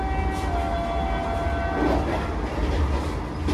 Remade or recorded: recorded